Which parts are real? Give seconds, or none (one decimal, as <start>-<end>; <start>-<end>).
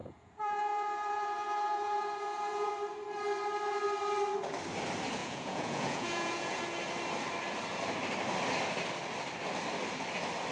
2.7-5.2; 6.6-10.5